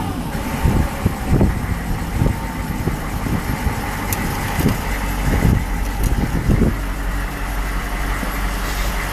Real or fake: real